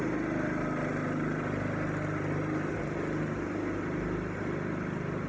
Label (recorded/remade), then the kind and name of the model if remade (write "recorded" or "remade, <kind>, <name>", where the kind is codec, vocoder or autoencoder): recorded